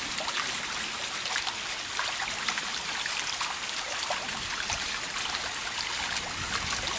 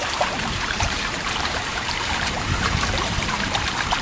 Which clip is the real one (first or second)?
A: first